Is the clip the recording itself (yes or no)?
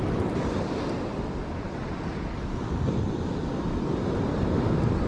yes